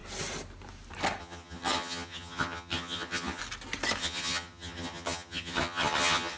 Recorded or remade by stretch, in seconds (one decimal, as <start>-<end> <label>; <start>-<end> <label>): 0.0-1.2 recorded; 1.2-3.4 remade; 3.4-4.0 recorded; 4.0-6.4 remade